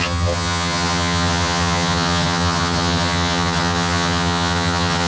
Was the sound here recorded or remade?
remade